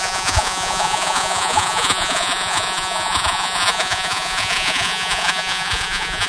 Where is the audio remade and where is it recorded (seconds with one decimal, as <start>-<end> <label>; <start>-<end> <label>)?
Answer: 0.0-6.3 remade